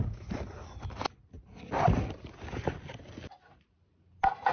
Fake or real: real